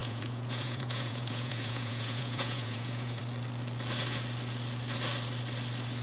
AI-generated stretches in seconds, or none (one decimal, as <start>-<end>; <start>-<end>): 0.0-3.2